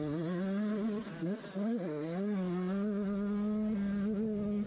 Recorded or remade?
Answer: recorded